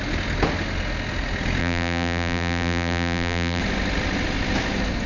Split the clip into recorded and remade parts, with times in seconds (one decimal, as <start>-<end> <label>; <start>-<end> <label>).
0.0-1.6 recorded; 1.6-3.6 remade; 3.6-5.1 recorded